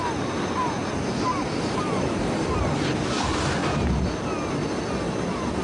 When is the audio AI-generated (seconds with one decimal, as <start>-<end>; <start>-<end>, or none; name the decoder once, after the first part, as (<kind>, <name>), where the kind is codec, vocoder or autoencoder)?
none